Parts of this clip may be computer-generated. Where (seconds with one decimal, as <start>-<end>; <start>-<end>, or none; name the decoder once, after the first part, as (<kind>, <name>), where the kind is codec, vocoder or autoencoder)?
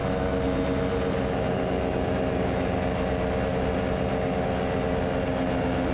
none